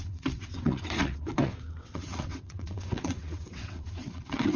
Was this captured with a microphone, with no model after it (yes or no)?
no